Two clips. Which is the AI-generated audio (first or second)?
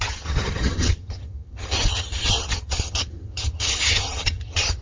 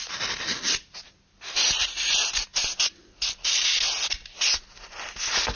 first